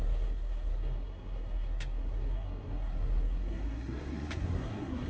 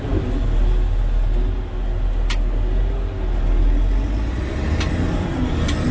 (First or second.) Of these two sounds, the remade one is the first